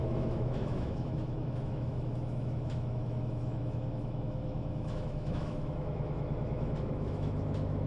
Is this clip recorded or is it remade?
remade